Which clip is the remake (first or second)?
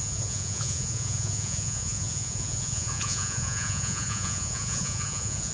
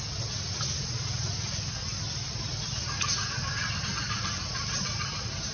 first